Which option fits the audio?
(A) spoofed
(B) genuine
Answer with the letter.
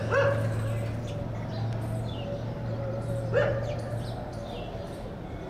B